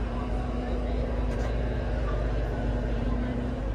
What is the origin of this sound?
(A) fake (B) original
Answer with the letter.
A